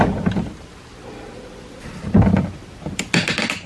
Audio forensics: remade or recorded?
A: recorded